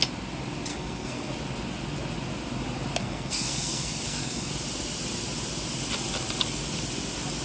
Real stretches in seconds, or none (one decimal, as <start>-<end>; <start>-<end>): 0.0-0.7; 1.3-3.0; 4.5-7.4